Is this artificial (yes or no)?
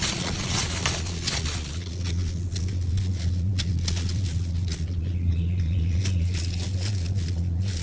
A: yes